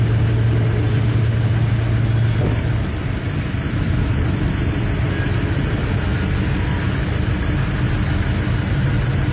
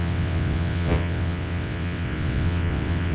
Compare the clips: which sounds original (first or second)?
first